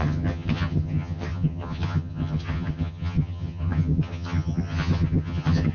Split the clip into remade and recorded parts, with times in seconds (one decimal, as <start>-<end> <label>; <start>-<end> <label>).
0.0-5.7 remade